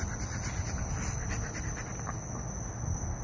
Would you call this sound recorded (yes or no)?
yes